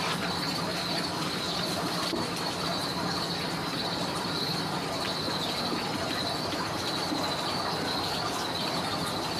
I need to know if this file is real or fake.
real